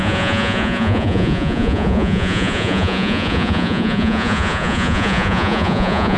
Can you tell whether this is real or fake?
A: fake